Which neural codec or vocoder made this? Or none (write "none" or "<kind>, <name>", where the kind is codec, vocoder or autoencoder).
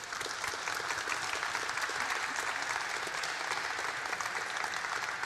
none